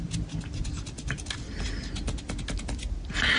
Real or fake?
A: real